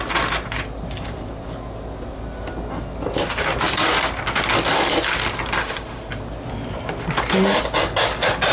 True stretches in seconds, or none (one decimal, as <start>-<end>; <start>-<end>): 0.0-5.6; 6.1-8.5